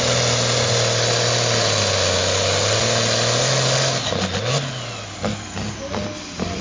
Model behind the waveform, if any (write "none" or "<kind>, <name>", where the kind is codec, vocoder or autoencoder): none